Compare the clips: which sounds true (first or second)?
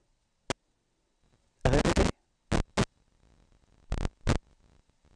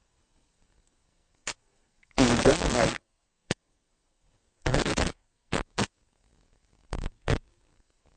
first